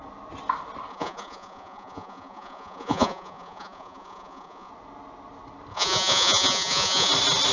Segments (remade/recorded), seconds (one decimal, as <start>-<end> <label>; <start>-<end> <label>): 0.0-0.9 recorded; 0.9-4.7 remade; 4.7-5.7 recorded; 5.7-7.1 remade; 7.1-7.5 recorded